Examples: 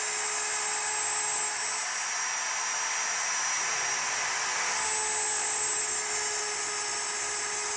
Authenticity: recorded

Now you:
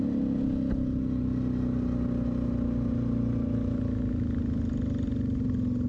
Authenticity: recorded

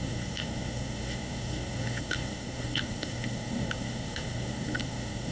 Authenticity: remade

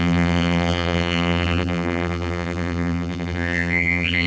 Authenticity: remade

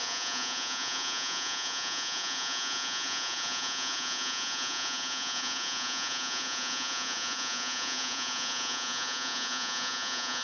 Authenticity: remade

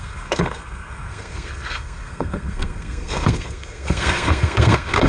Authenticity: remade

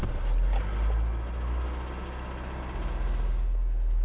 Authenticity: recorded